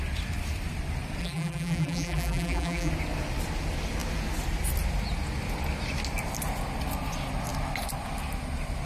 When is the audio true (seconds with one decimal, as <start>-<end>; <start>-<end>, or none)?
0.0-1.2; 2.9-8.9